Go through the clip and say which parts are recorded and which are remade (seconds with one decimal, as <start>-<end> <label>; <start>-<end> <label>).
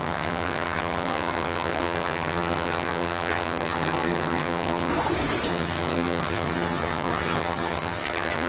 0.0-4.9 remade; 4.9-5.5 recorded; 5.5-8.5 remade